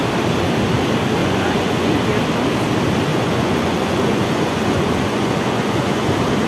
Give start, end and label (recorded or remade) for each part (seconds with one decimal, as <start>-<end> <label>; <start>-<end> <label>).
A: 0.0-1.2 recorded; 1.2-1.9 remade; 1.9-3.1 recorded; 3.1-6.1 remade; 6.1-6.5 recorded